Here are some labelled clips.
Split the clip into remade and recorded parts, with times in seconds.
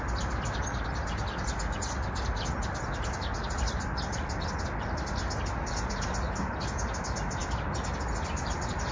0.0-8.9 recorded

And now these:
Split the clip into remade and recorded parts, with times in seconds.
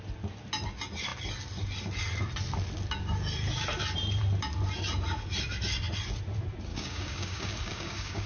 0.0-6.7 recorded; 6.7-8.3 remade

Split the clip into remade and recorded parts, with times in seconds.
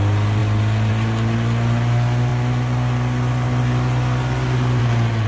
0.0-5.3 recorded